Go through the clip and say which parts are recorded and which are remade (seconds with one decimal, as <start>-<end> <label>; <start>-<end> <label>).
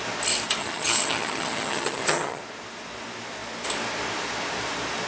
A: 0.0-0.6 recorded; 0.6-2.4 remade; 2.4-5.1 recorded